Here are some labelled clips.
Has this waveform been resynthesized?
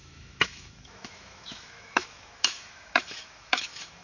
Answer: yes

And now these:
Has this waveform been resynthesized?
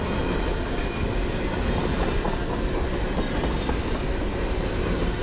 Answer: no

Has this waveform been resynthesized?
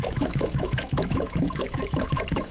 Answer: yes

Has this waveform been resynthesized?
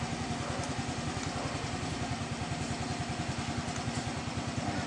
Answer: no